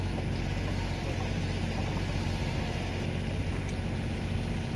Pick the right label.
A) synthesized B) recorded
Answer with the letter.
B